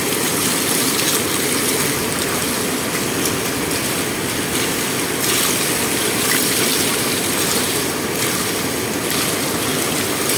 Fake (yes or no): no